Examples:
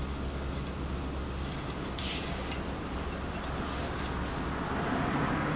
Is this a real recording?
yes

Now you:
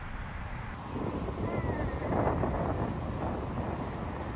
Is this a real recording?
yes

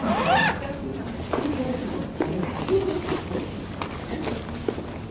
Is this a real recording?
yes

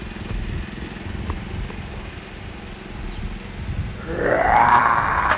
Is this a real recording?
yes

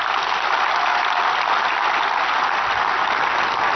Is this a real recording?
yes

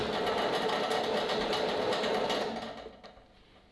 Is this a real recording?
yes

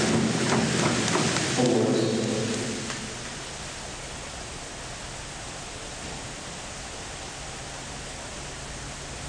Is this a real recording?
yes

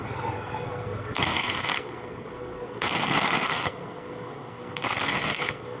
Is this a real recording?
no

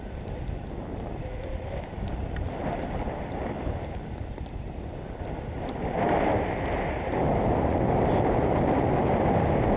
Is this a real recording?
yes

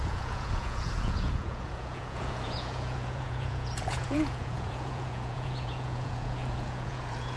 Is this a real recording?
no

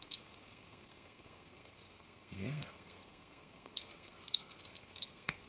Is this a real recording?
no